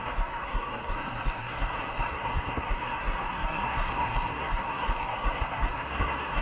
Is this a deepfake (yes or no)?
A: yes